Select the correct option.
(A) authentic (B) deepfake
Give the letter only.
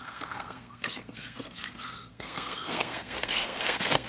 B